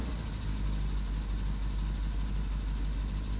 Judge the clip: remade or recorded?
recorded